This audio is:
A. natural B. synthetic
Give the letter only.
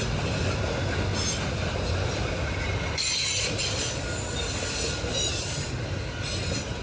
A